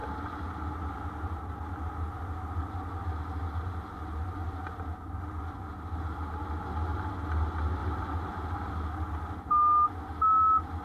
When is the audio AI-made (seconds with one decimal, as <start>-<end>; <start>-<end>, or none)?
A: none